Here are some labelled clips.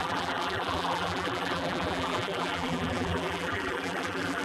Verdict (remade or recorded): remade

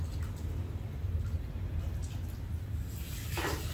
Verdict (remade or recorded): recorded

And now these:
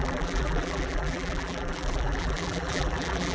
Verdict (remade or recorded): remade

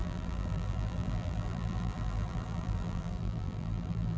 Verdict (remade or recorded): remade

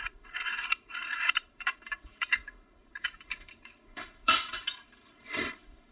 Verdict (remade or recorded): remade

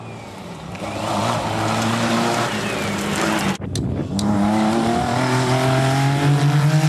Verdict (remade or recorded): recorded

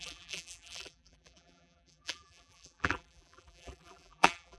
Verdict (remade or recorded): remade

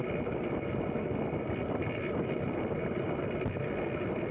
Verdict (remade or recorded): remade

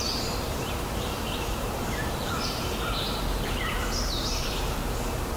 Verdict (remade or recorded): remade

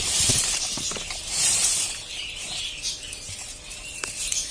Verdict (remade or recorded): remade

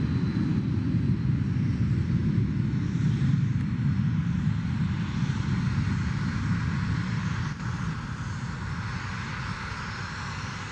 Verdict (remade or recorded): recorded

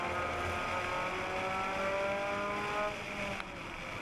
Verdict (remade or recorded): recorded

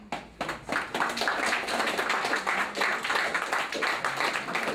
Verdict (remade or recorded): recorded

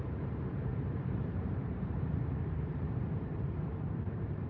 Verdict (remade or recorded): remade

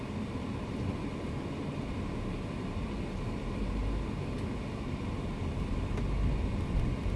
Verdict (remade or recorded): recorded